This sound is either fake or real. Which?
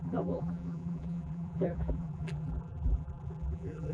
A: fake